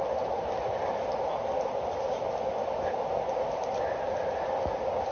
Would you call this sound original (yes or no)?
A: yes